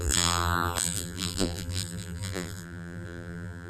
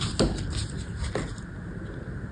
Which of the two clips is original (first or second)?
second